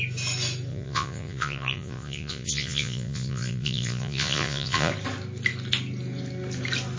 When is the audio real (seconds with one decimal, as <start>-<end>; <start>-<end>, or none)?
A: 0.0-0.7; 4.9-7.0